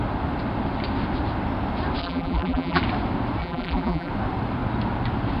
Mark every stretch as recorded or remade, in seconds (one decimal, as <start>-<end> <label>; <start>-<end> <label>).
0.0-2.0 recorded; 2.0-2.8 remade; 2.8-3.4 recorded; 3.4-4.1 remade; 4.1-5.4 recorded